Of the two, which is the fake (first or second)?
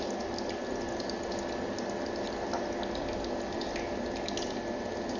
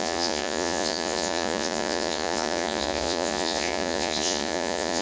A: second